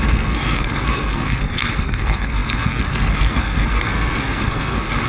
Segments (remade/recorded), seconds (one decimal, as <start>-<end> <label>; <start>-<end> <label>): 0.0-5.1 remade